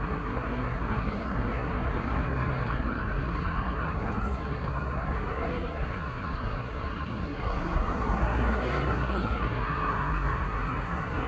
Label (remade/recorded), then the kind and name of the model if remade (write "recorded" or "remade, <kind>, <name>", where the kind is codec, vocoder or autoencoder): remade, codec, SNAC